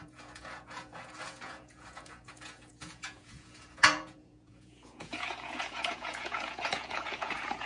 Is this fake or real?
fake